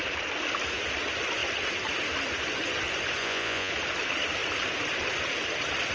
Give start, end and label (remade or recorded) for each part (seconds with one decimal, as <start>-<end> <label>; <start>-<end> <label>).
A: 0.0-3.2 recorded; 3.2-3.7 remade; 3.7-5.9 recorded